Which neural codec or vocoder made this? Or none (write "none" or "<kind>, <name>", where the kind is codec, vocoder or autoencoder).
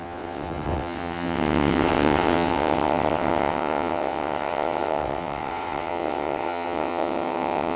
vocoder, WaveNeXt